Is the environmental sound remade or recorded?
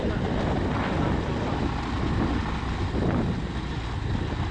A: recorded